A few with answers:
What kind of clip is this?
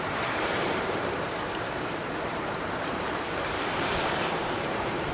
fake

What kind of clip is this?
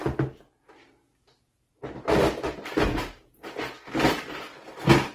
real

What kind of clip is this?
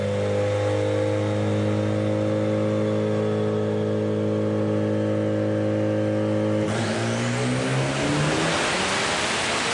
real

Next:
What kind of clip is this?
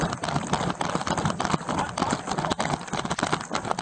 real